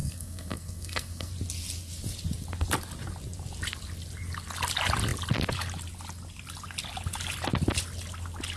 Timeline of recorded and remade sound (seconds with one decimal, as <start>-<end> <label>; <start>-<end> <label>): 0.0-1.3 remade; 1.3-8.6 recorded